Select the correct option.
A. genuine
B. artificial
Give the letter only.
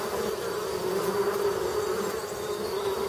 A